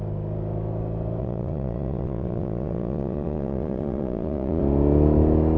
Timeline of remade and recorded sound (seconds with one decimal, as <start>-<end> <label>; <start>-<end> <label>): 0.0-1.2 recorded; 1.2-4.6 remade; 4.6-5.6 recorded